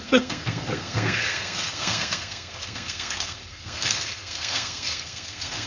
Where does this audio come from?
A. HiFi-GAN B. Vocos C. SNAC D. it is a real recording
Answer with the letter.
C